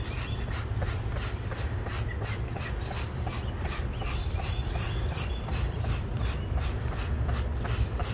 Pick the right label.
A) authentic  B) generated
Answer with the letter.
B